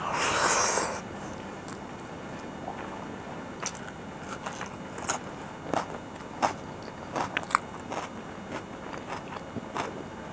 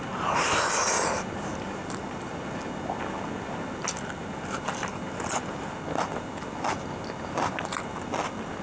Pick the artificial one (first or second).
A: second